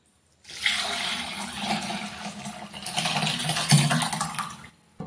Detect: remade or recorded recorded